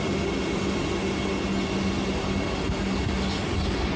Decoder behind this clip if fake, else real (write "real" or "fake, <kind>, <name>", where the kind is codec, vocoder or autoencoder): real